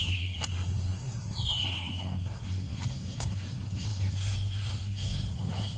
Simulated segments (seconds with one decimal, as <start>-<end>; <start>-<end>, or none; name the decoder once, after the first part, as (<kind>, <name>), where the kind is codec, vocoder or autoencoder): 0.0-5.8 (codec, SNAC)